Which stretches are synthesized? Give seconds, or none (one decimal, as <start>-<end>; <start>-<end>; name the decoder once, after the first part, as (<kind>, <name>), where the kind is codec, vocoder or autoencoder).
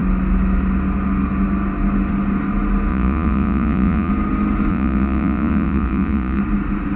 2.9-4.1 (vocoder, Vocos); 4.7-6.4